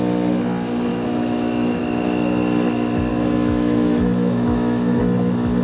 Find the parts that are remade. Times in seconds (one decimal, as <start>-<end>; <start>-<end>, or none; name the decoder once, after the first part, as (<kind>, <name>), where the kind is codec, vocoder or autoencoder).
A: 0.9-1.8 (autoencoder, DAC-VAE); 3.1-5.0